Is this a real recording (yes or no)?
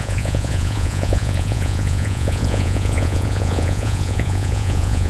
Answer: no